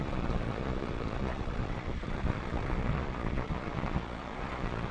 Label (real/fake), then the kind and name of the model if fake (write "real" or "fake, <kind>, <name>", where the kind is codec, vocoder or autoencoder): fake, vocoder, Vocos